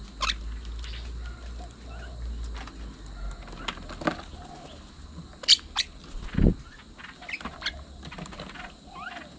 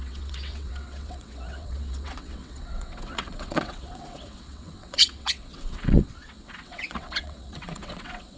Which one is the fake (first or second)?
second